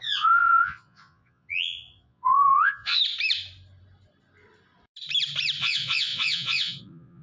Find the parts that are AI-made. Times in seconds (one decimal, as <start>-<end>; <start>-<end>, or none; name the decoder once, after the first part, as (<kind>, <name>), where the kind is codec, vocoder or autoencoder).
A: 0.0-3.0 (vocoder, Vocos); 5.6-7.2